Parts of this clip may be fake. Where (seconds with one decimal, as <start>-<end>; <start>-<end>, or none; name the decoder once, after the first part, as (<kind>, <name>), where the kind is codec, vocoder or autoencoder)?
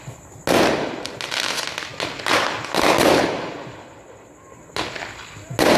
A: none